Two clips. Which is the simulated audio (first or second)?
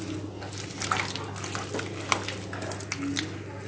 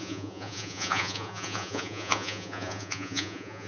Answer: second